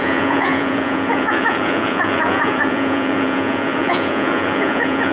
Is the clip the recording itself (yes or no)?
no